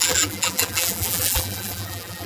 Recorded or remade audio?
remade